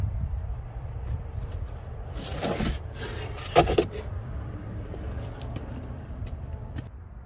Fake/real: fake